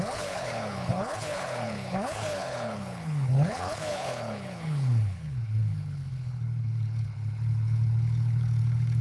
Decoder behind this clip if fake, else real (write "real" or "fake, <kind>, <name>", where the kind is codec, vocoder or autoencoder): fake, codec, HILCodec